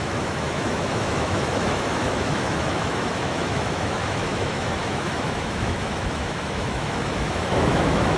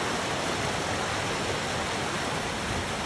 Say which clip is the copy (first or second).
first